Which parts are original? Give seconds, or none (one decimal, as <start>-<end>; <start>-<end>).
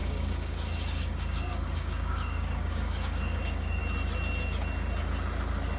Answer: 3.8-5.8